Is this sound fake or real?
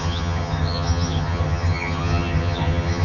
fake